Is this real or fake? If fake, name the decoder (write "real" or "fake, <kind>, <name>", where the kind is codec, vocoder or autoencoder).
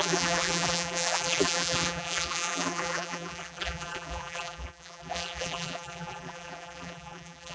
fake, vocoder, BigVGAN v2